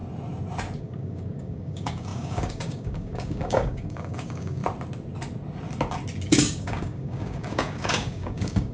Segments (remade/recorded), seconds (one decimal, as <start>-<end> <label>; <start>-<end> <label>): 0.0-0.8 recorded; 0.8-4.6 remade; 4.6-6.3 recorded; 6.3-8.7 remade

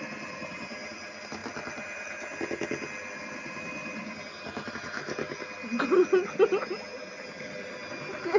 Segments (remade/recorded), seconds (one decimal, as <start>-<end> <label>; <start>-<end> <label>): 0.0-8.4 recorded

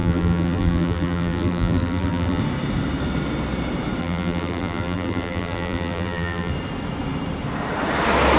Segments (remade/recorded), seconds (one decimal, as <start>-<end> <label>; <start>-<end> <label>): 0.0-2.4 remade; 2.4-4.0 recorded; 4.0-6.5 remade; 6.5-8.4 recorded

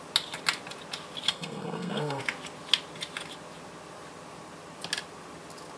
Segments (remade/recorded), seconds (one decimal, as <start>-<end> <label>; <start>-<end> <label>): 0.0-1.3 recorded; 1.3-2.2 remade; 2.2-5.8 recorded